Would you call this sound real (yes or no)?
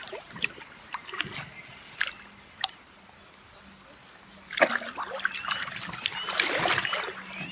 no